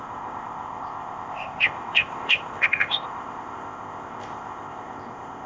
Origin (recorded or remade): remade